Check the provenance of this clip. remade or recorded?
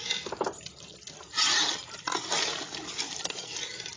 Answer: recorded